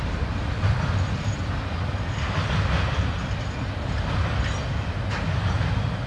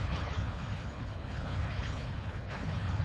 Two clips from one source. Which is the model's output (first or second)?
second